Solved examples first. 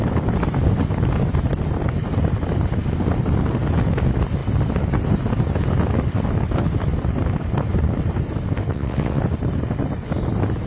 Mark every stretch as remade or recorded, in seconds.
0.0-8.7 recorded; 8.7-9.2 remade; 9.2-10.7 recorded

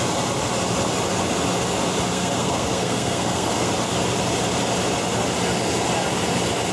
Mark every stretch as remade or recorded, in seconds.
0.0-2.1 recorded; 2.1-3.7 remade; 3.7-6.7 recorded

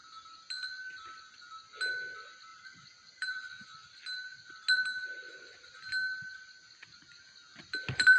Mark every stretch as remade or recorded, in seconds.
0.0-2.5 recorded; 2.5-4.5 remade; 4.5-7.5 recorded; 7.5-8.2 remade

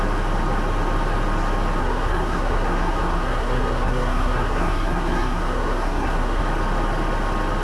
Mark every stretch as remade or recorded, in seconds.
0.0-1.8 recorded; 1.8-6.4 remade; 6.4-7.6 recorded

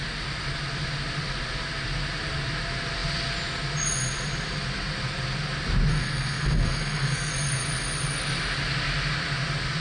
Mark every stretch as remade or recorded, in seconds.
0.0-5.9 recorded; 5.9-7.3 remade; 7.3-9.8 recorded